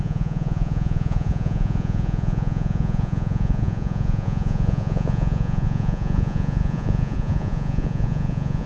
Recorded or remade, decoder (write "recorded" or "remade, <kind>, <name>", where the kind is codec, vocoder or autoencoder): remade, vocoder, Vocos